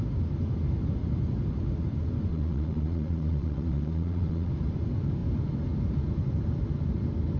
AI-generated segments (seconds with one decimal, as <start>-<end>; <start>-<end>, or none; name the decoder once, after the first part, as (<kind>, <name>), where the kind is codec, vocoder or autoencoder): 2.3-4.5 (vocoder, Vocos)